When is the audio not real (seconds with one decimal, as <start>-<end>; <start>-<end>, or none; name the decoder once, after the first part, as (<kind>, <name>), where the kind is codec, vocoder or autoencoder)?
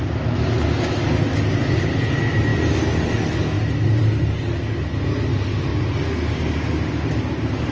none